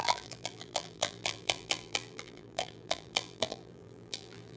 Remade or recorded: remade